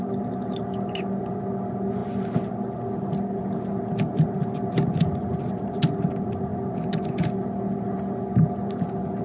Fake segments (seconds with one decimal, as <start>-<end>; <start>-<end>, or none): none